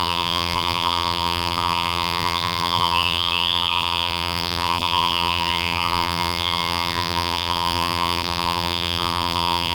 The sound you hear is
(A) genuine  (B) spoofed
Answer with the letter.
B